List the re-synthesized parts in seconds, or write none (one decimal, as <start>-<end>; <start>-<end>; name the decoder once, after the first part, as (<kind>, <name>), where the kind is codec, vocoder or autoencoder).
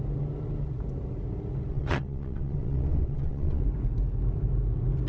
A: 1.7-3.6 (vocoder, WaveNeXt)